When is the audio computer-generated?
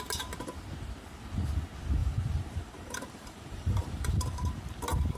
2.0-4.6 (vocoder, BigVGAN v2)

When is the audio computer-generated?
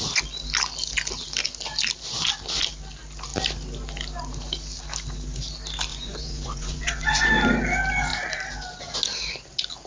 5.9-7.3 (vocoder, Vocos)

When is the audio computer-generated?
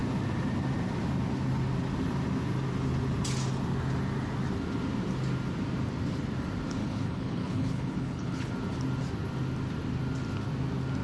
6.8-8.5 (codec, HILCodec)